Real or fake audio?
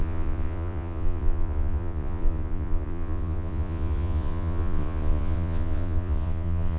fake